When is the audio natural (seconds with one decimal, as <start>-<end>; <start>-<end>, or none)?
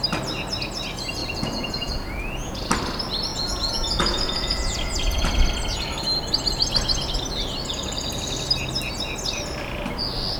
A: 0.0-1.2; 2.7-3.3; 5.3-10.4